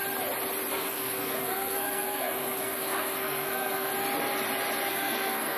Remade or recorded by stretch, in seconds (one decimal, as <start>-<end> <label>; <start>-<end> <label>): 0.0-0.7 recorded; 0.7-3.9 remade; 3.9-4.9 recorded; 4.9-5.6 remade